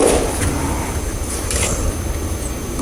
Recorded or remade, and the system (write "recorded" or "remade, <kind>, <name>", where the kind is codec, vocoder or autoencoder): recorded